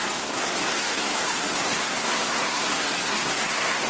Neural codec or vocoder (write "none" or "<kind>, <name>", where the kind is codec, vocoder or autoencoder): codec, SNAC